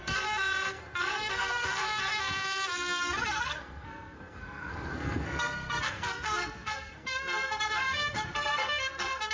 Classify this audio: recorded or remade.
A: remade